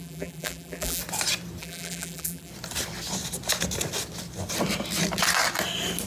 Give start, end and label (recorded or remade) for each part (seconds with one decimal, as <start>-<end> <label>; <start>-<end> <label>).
0.0-1.0 remade; 1.0-1.6 recorded; 1.6-2.5 remade; 2.5-6.1 recorded